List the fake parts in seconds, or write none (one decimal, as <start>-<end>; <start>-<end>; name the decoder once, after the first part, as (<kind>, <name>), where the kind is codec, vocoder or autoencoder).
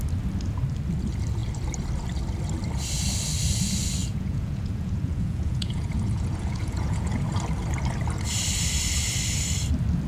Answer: 4.0-7.3 (vocoder, Vocos)